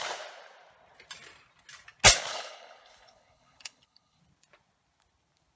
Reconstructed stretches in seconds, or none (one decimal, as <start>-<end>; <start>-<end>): 2.3-4.2